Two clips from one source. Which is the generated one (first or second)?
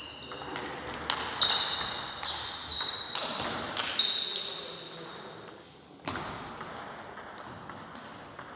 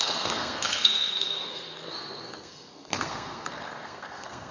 second